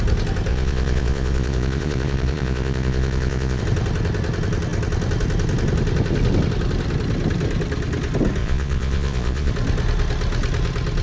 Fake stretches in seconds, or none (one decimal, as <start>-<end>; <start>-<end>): 0.5-3.6; 8.4-9.5